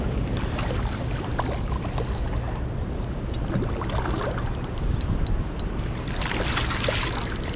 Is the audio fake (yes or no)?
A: no